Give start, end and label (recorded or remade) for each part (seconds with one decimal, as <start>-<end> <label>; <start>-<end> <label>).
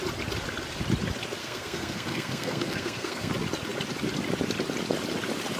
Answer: 0.0-1.4 recorded; 1.4-3.3 remade; 3.3-5.6 recorded